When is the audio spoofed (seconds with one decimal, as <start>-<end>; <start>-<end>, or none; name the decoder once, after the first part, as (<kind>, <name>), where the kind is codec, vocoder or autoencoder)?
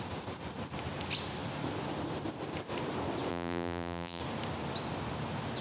3.3-4.2 (vocoder, BigVGAN v2)